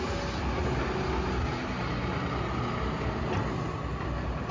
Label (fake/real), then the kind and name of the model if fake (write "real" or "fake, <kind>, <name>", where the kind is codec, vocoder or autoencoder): real